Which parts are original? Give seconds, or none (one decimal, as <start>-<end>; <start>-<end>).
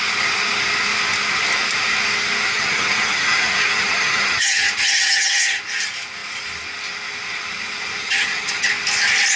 0.0-2.5; 5.6-8.0; 8.7-9.4